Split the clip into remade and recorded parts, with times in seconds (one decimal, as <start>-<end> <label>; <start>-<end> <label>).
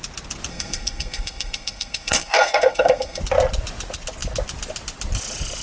0.0-0.5 recorded; 0.5-3.2 remade; 3.2-5.6 recorded